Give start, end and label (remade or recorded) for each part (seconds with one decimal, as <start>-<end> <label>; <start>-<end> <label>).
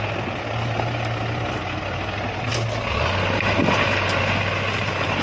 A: 0.0-5.2 recorded